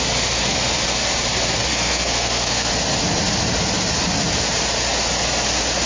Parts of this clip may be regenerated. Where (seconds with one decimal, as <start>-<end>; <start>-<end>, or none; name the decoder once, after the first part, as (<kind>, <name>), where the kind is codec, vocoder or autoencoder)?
1.7-2.7 (codec, SNAC)